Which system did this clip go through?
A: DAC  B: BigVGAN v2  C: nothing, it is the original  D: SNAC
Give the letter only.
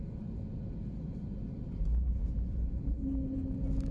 C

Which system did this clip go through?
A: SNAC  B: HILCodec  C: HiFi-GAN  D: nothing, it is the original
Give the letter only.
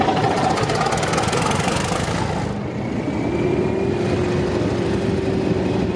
D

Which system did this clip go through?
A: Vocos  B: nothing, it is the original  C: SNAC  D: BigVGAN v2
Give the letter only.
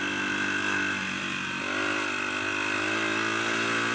B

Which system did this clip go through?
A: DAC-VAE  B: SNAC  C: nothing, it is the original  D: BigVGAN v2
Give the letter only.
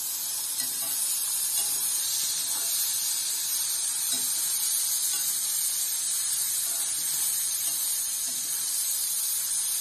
C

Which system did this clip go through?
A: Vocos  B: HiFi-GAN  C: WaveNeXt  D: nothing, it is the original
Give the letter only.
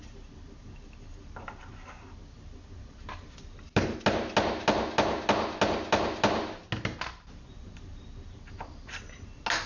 D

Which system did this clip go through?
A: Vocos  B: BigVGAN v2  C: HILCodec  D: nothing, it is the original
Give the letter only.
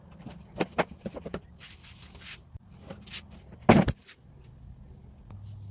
D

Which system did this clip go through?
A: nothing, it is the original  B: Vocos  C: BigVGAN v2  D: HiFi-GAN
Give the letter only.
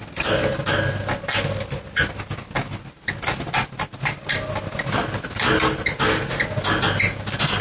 A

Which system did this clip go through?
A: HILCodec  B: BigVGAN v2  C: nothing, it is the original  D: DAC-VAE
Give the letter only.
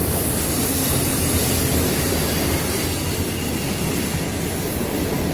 C